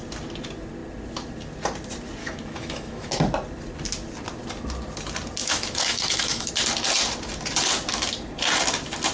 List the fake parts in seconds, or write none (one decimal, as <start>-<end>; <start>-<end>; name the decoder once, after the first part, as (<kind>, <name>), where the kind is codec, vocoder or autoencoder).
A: 2.2-3.1 (autoencoder, DAC-VAE); 5.4-6.5